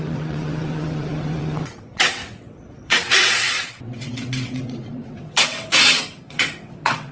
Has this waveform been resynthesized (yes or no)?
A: yes